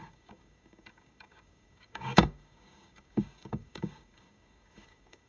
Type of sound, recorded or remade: remade